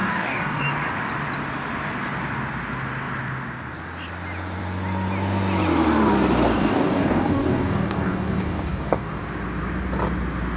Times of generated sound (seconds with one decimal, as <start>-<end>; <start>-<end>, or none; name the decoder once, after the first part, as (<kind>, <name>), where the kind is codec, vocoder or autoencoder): 0.0-0.6 (codec, DAC); 6.6-9.2